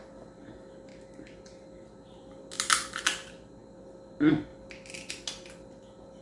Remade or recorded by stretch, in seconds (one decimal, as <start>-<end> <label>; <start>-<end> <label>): 0.0-6.2 recorded